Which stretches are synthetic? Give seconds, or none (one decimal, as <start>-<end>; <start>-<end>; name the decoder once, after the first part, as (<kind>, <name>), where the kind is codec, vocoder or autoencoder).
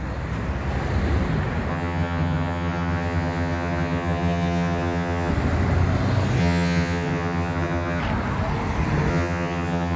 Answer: 1.7-5.3 (vocoder, HiFi-GAN); 6.4-8.0; 9.1-10.0